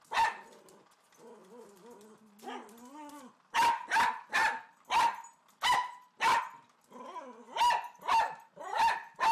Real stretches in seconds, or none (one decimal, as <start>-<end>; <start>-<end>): 0.0-7.2; 8.2-9.3